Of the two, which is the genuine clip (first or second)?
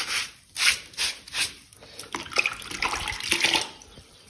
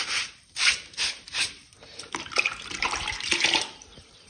first